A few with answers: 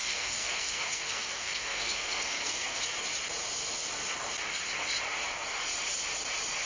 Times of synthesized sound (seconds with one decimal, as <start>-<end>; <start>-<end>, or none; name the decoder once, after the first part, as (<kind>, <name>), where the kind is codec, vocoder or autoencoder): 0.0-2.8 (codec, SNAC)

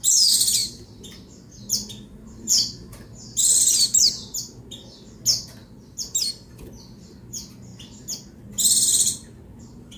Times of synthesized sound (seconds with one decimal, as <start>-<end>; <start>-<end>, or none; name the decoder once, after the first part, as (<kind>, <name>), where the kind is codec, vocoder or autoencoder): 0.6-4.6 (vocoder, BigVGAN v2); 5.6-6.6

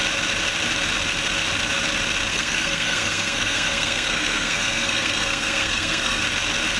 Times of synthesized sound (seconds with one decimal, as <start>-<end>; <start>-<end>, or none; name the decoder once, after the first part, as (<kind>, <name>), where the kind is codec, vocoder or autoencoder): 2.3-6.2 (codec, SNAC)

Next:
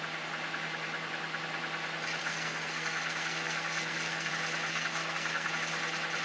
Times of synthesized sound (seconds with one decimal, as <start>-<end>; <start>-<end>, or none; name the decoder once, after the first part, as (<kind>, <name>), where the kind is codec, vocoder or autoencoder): 2.2-4.3 (codec, SNAC); 4.7-5.5